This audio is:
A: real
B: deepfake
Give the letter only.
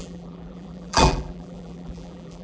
B